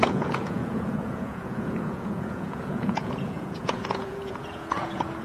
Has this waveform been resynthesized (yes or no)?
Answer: yes